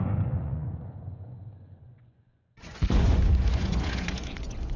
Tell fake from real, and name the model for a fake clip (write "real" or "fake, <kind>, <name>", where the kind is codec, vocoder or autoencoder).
fake, vocoder, Vocos